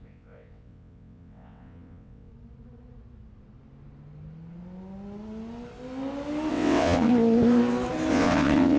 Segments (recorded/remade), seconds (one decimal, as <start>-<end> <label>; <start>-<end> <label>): 0.0-2.3 remade; 2.3-6.5 recorded; 6.5-7.1 remade; 7.1-8.1 recorded; 8.1-8.8 remade